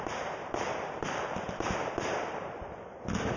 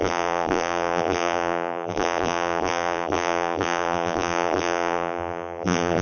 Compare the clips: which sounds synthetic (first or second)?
second